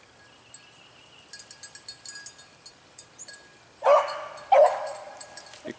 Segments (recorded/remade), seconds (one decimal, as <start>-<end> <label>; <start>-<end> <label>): 0.0-2.7 recorded; 2.7-5.3 remade; 5.3-5.8 recorded